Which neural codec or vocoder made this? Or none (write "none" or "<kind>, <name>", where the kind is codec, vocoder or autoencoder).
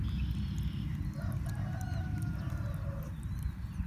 none